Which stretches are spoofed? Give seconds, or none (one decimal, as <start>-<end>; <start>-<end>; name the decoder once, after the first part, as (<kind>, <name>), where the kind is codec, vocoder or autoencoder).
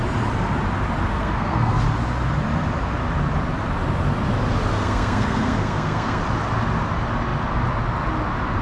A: 1.1-1.8 (codec, SNAC); 4.7-6.2